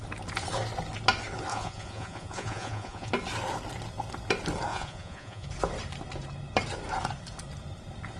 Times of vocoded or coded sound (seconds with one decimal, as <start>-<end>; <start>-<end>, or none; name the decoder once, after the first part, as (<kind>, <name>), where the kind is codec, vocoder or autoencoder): 1.5-3.1 (vocoder, Vocos); 4.7-5.5